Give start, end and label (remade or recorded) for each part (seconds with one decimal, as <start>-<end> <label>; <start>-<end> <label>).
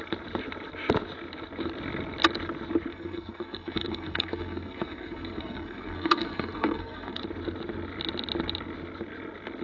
0.0-2.9 recorded; 2.9-7.2 remade; 7.2-9.6 recorded